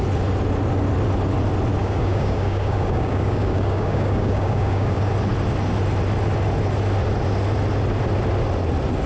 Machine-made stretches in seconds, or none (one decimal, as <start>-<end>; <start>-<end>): 1.8-5.1

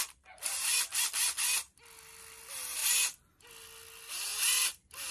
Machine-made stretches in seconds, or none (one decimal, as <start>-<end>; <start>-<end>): none

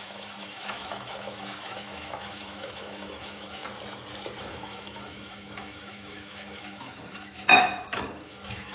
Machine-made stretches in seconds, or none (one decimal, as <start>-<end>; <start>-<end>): 0.0-3.6; 4.4-8.7